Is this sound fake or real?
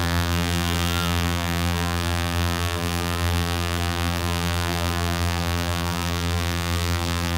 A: fake